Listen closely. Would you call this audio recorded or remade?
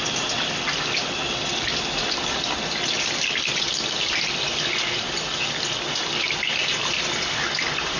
recorded